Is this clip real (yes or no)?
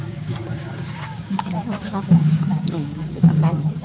no